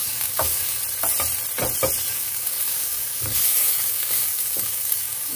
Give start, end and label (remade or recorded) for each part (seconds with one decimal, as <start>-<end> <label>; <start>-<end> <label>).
0.0-0.8 remade; 0.8-2.1 recorded; 2.1-5.4 remade